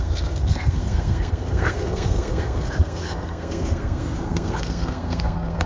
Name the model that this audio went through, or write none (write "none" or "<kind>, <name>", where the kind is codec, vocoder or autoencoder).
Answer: codec, SNAC